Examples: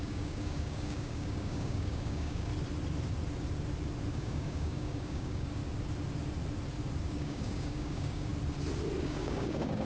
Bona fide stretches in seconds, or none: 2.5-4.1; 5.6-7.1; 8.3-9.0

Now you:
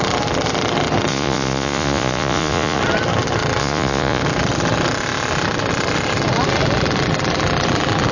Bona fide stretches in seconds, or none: 0.0-1.1; 2.8-3.6; 4.2-8.1

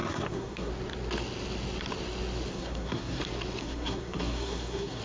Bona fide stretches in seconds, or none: 0.7-2.5; 3.2-3.6

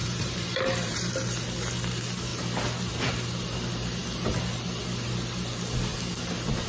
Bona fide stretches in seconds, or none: 1.1-6.7

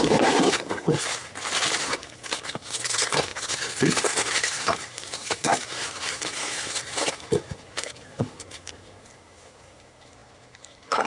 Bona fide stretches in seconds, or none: 1.3-1.8

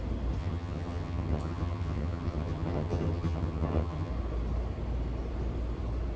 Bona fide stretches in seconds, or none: 0.0-0.4; 4.1-6.2

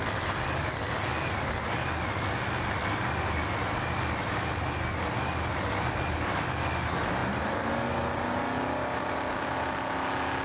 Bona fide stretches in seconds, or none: 0.0-7.2; 7.7-10.4

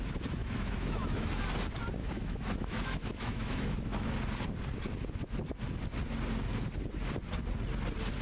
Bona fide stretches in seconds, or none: 0.0-0.4; 1.4-2.0; 4.1-8.2